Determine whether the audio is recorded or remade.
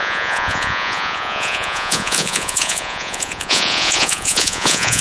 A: remade